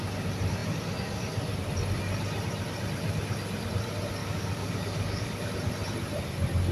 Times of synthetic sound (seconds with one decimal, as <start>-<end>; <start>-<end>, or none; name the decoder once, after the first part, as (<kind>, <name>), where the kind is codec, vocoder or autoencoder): 4.2-5.5 (codec, DAC)